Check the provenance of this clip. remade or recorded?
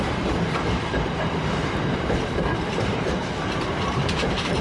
remade